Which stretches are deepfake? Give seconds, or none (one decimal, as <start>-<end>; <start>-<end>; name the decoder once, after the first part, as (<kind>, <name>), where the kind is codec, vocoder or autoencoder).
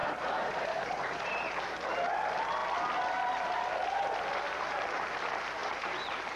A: 0.0-1.6 (vocoder, BigVGAN v2); 5.6-6.4